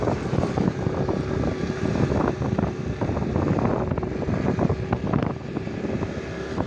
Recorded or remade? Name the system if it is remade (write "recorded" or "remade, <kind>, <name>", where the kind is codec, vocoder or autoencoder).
recorded